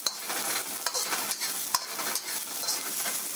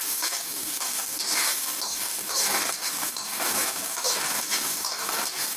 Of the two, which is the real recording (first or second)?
first